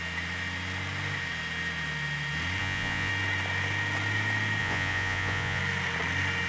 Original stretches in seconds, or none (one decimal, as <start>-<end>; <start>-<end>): 0.0-2.6; 3.1-4.6; 5.6-6.5